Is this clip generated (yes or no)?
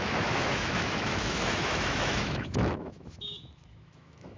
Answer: yes